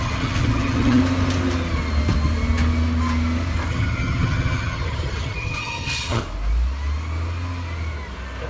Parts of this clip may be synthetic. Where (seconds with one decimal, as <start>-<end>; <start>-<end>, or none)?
0.0-1.0; 3.7-6.2